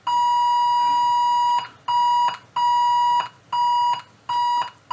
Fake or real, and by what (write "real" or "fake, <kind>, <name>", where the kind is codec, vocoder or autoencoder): real